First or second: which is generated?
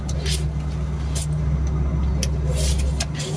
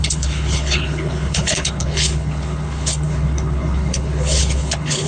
second